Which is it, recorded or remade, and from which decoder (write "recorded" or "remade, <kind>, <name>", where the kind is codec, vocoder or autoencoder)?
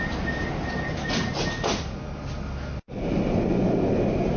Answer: recorded